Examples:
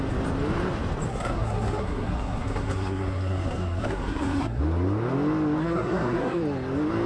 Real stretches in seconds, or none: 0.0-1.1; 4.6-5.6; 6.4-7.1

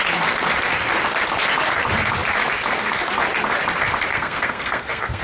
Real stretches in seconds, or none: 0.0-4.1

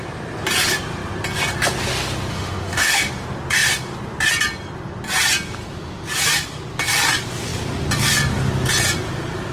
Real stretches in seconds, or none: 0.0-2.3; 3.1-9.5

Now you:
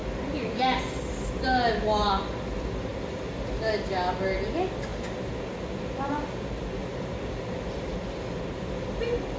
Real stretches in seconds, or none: 0.0-2.9; 3.7-6.8; 7.9-9.4

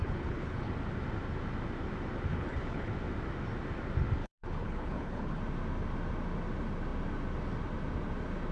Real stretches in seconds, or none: 0.7-2.3; 2.9-4.2; 5.4-8.5

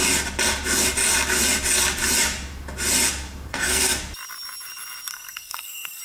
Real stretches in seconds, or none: 0.0-3.5; 4.0-5.1